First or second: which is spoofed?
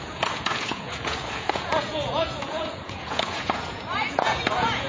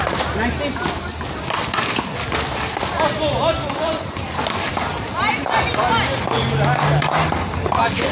first